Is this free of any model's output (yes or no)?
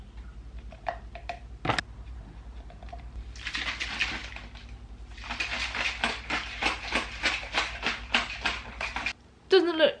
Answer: yes